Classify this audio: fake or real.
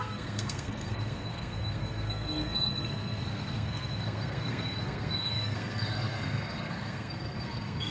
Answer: fake